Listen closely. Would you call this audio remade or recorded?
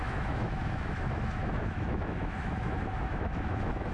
remade